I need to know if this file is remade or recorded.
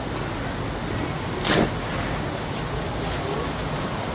recorded